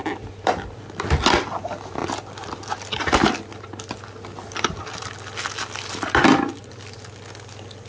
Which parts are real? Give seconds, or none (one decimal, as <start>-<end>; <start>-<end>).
0.0-7.9